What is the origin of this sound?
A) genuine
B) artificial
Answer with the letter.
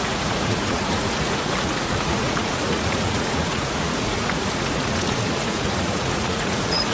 B